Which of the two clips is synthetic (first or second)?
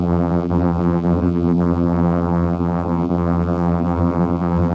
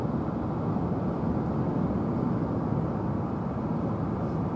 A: first